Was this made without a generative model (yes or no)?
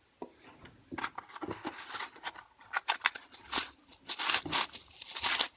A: yes